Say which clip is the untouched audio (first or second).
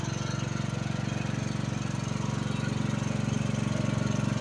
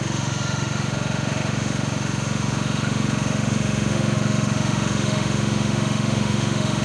first